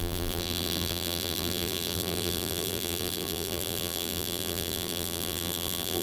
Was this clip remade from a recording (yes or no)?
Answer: yes